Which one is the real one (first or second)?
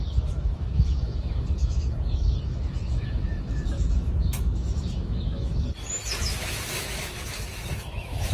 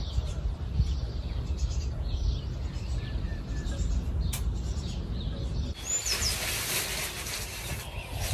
second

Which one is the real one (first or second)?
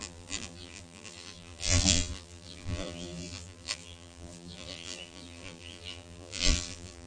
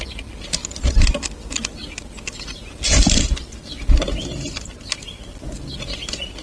second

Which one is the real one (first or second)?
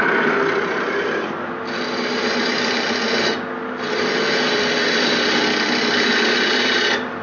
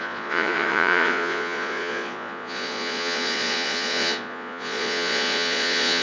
first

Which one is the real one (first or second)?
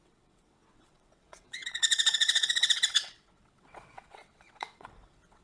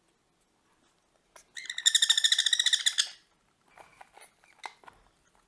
second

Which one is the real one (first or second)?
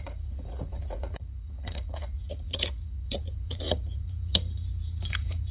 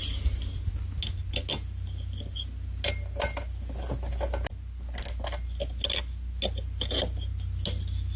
second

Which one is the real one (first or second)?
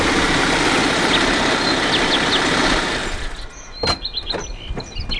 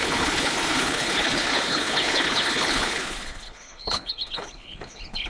first